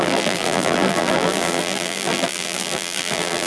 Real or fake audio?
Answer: fake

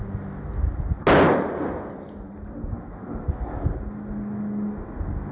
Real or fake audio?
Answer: real